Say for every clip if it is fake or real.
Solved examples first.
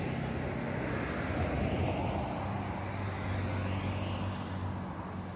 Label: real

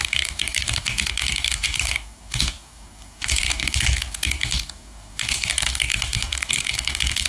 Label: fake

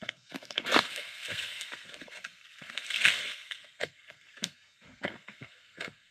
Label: fake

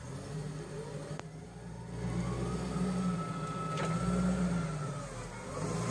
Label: real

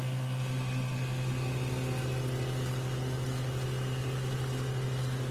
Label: real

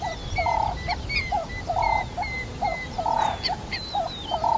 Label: real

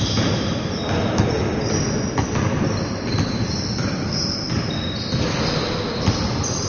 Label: real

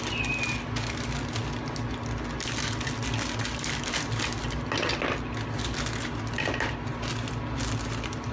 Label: real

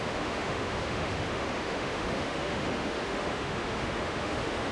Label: fake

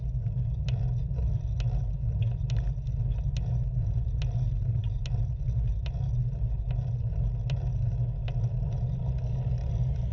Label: real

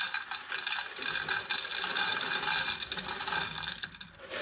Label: real